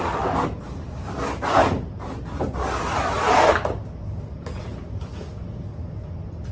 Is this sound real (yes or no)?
yes